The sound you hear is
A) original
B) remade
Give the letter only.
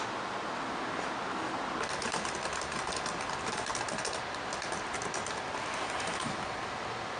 A